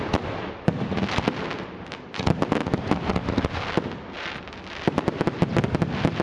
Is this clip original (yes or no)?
yes